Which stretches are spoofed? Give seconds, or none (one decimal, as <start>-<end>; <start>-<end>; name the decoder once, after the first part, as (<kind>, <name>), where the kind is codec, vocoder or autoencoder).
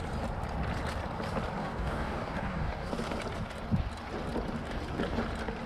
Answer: 1.6-2.9 (codec, DAC)